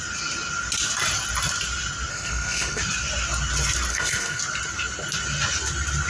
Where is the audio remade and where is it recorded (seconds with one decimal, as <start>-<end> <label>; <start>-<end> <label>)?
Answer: 0.0-2.1 recorded; 2.1-2.8 remade; 2.8-3.9 recorded; 3.9-4.4 remade; 4.4-6.1 recorded